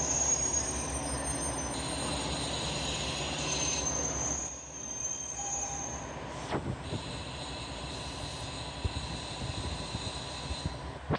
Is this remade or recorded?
recorded